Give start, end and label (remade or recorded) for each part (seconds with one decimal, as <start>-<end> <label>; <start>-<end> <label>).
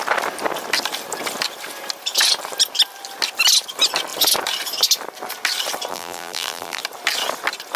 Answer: 0.0-5.9 recorded; 5.9-6.8 remade; 6.8-7.8 recorded